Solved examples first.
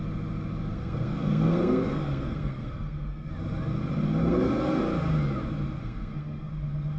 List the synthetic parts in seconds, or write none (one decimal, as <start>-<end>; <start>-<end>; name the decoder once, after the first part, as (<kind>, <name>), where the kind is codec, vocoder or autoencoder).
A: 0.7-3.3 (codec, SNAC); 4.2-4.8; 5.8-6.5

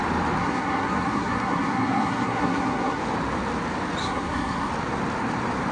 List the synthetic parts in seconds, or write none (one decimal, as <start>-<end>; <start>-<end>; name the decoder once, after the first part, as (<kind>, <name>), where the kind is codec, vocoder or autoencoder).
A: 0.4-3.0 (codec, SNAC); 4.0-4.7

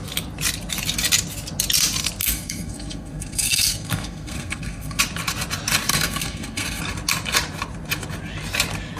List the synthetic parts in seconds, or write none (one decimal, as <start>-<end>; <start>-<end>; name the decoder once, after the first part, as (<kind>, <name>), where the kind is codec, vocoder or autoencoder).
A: 2.2-5.0 (codec, SNAC); 5.9-6.8

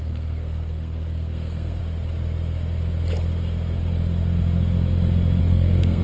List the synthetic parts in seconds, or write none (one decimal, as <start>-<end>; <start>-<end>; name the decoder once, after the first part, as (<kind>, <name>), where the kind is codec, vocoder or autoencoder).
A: 0.0-1.8 (codec, SNAC); 5.4-6.0

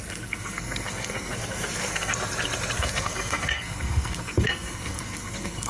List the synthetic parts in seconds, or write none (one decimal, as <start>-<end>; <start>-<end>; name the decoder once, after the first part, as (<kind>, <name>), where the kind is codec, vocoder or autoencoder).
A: 0.0-2.1 (codec, SNAC); 2.8-5.7